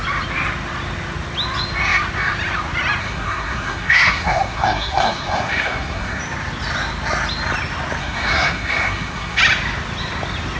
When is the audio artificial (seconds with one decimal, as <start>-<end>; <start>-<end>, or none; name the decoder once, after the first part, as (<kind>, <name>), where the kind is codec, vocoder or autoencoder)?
3.0-6.2 (codec, SNAC); 8.0-9.4